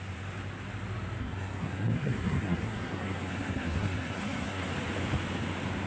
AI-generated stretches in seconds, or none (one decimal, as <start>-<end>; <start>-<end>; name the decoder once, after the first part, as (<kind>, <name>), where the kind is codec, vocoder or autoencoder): 1.2-4.7 (codec, SNAC)